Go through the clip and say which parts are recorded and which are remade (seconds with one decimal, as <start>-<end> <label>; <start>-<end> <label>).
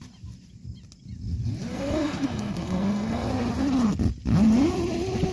0.0-1.7 recorded; 1.7-3.3 remade; 3.3-5.3 recorded